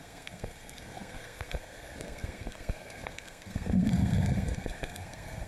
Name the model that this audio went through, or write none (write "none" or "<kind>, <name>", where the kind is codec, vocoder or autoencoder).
codec, SNAC